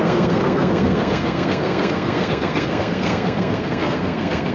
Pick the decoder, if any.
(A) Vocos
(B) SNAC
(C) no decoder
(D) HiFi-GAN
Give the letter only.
B